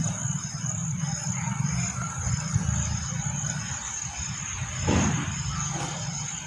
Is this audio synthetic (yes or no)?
no